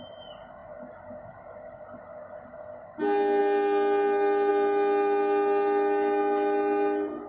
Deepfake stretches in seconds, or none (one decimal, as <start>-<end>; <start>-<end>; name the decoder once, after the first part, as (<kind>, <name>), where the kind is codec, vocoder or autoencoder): none